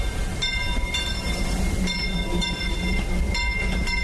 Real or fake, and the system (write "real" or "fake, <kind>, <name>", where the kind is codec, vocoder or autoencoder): fake, vocoder, BigVGAN v2